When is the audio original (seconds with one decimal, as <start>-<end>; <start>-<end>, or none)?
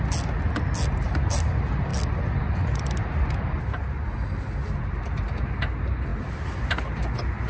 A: 0.0-7.5